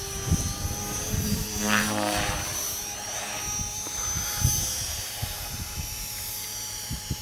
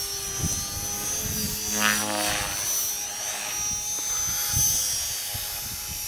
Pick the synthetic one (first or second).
first